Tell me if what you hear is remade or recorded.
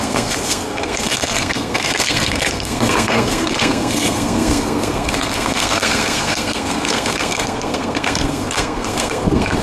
remade